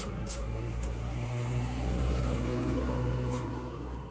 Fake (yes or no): yes